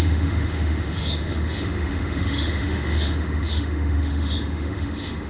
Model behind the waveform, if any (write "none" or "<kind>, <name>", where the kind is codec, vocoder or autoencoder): autoencoder, DAC-VAE